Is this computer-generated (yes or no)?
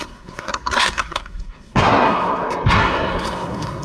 yes